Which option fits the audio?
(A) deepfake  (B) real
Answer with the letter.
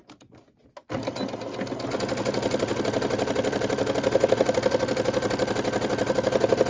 B